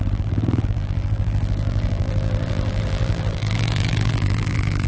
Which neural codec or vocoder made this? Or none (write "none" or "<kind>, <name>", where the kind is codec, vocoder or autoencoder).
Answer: vocoder, BigVGAN v2